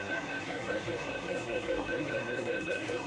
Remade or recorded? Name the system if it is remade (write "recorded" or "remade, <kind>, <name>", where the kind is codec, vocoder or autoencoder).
remade, codec, SNAC